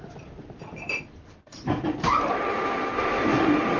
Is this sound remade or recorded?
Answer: recorded